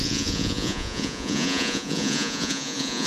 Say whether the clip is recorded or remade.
remade